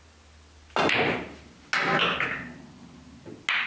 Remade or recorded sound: recorded